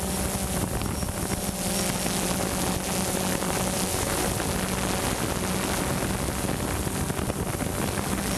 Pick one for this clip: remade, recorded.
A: recorded